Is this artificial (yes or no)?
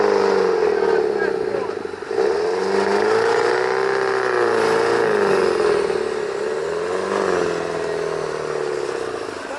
no